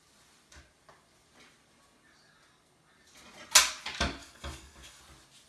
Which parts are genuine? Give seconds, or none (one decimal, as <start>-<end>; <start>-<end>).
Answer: 0.0-4.2; 5.0-5.5